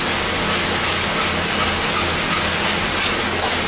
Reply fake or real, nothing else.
real